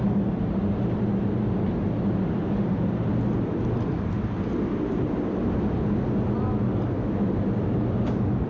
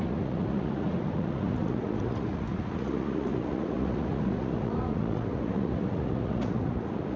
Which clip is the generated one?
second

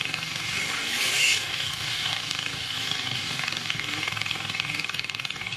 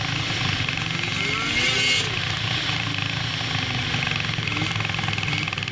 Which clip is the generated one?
first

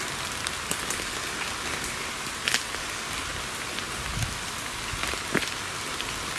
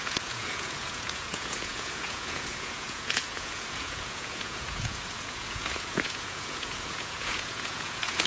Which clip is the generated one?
second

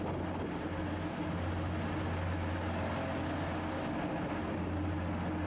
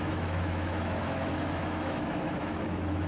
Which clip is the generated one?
second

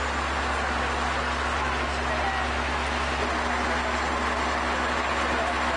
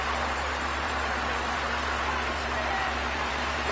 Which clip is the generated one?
second